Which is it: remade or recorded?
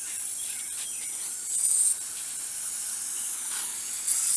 remade